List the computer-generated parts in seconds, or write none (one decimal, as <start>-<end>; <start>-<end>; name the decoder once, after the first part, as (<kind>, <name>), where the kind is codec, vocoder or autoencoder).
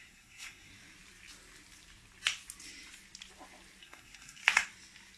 0.0-0.7 (codec, SNAC); 3.8-4.4